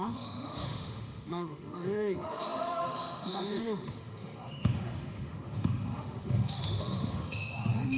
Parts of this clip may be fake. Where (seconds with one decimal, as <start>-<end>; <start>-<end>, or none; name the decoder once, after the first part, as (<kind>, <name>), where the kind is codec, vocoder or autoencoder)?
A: 0.0-8.0 (autoencoder, DAC-VAE)